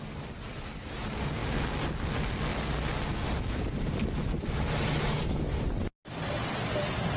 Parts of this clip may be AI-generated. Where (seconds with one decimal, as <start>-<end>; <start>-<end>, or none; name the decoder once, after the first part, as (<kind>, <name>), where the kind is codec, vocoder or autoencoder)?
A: none